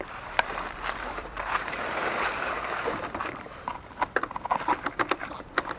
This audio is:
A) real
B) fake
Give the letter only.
B